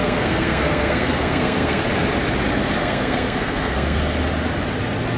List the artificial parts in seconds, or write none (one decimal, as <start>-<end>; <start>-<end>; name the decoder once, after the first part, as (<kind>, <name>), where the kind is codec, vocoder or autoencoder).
0.0-1.8 (codec, SNAC); 2.8-4.0